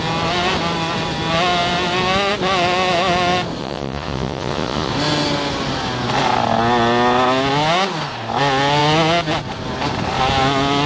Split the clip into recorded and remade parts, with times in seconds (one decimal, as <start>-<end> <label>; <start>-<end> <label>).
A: 0.0-3.6 recorded; 3.6-4.9 remade; 4.9-10.9 recorded